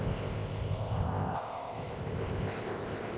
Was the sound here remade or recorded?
remade